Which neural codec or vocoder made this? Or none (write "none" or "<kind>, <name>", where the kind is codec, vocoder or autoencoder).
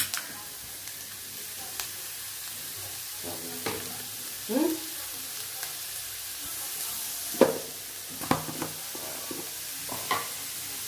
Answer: none